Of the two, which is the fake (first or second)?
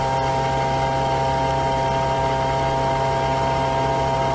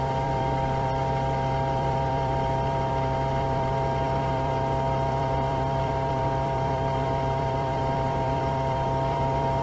second